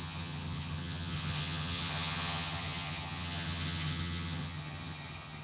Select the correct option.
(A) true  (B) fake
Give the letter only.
B